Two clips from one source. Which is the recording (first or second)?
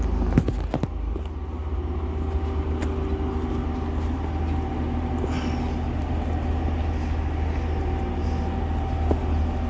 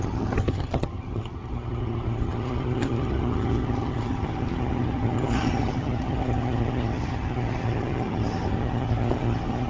first